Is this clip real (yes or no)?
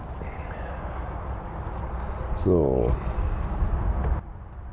yes